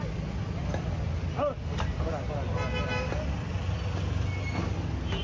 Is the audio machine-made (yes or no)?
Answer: no